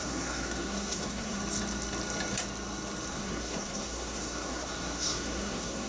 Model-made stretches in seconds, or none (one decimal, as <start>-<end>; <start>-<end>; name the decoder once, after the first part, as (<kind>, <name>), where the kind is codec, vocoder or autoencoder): 0.0-1.4 (codec, SNAC); 3.1-5.9